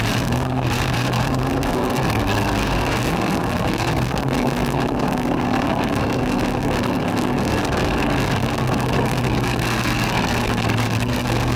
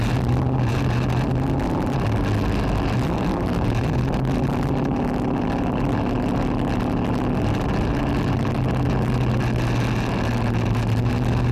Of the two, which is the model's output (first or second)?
first